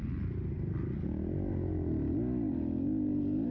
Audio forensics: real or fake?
real